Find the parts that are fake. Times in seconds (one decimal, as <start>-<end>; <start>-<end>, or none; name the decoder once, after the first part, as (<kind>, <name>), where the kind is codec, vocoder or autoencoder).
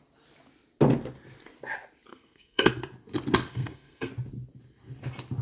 2.1-2.7 (codec, SNAC); 3.5-4.1